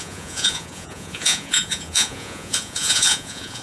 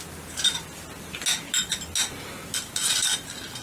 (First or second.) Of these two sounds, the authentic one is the second